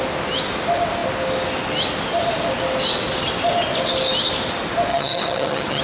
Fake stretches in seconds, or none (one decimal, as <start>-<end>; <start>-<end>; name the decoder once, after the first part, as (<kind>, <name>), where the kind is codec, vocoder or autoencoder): 4.9-5.8 (vocoder, HiFi-GAN)